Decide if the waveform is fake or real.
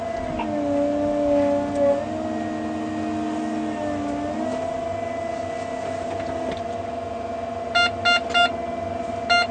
real